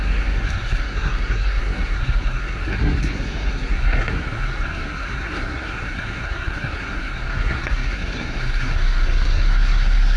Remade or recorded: remade